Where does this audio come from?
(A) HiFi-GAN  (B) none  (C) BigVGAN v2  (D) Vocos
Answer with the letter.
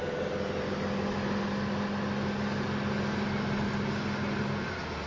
B